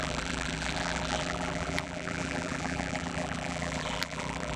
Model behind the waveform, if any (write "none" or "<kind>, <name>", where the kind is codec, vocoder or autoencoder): vocoder, BigVGAN v2